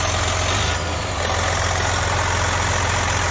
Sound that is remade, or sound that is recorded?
recorded